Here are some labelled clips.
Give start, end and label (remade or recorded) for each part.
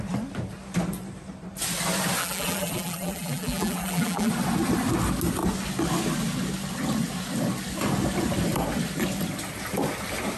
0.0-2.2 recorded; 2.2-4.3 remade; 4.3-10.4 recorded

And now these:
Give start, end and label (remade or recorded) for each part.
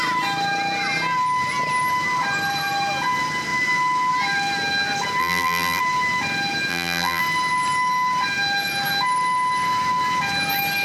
0.0-5.2 recorded; 5.2-5.8 remade; 5.8-6.7 recorded; 6.7-7.2 remade; 7.2-10.8 recorded